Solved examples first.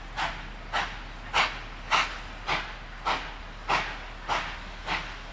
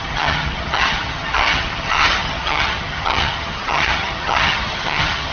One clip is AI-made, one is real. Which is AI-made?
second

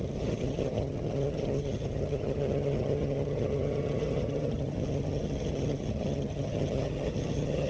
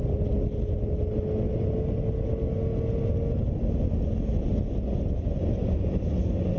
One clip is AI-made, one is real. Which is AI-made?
first